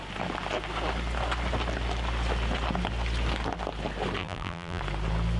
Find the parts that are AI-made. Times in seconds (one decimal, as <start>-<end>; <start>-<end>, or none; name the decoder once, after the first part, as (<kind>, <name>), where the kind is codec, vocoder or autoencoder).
4.2-4.8 (vocoder, BigVGAN v2)